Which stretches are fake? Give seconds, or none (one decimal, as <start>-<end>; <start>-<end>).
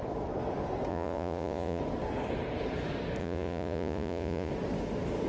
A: 0.9-1.8; 3.2-4.5